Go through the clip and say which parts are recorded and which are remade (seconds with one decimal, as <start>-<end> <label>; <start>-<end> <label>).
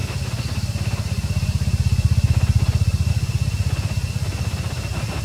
0.0-5.2 recorded